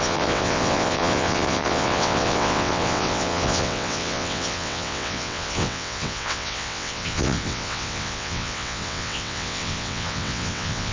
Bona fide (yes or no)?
no